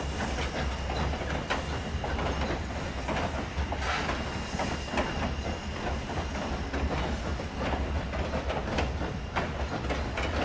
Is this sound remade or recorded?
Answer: recorded